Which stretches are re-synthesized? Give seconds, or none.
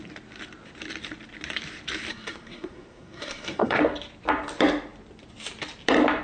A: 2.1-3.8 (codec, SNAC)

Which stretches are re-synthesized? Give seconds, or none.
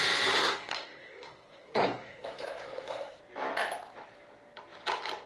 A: 0.4-3.2 (codec, SNAC)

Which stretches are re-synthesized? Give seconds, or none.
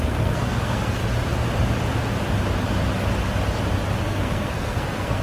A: 0.0-1.0 (codec, SNAC); 4.0-5.2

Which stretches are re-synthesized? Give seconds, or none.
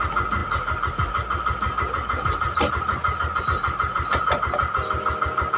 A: none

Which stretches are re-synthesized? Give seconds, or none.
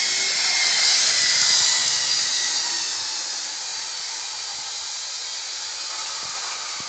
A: none